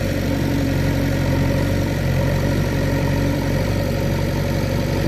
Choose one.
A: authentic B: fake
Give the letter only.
B